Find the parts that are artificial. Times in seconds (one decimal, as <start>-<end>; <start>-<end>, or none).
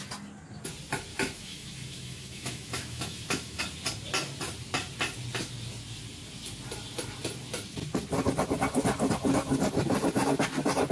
1.1-3.6